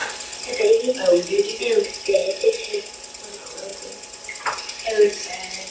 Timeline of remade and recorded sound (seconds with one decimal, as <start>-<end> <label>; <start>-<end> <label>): 0.0-5.7 recorded